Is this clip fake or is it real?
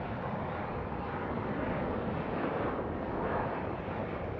fake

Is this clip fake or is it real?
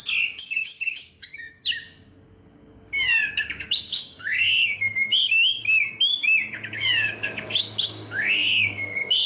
fake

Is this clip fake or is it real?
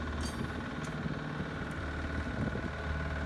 real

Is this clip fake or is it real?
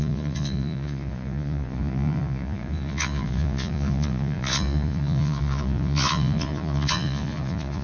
fake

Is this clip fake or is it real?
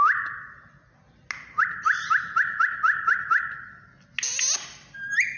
real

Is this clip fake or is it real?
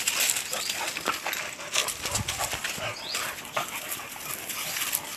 real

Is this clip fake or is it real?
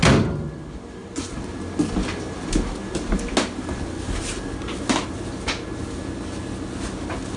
real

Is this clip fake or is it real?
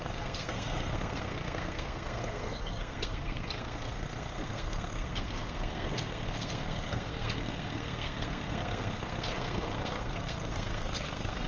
fake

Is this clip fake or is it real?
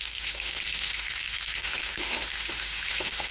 fake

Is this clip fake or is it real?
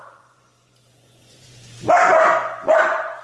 fake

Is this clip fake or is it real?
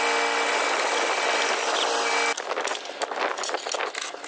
real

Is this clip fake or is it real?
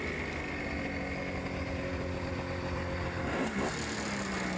real